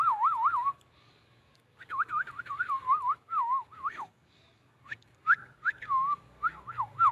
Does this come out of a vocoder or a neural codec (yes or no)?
yes